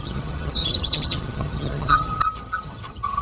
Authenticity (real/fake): fake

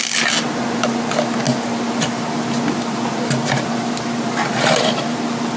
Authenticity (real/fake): real